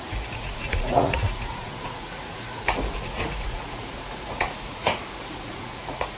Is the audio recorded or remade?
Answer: remade